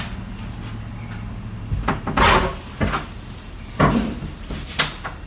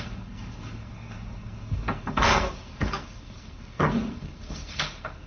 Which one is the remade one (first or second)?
second